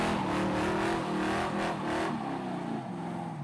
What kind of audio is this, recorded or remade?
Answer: recorded